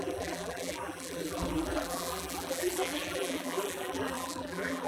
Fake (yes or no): yes